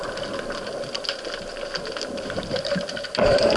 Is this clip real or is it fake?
real